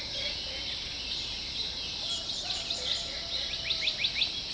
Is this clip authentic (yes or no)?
yes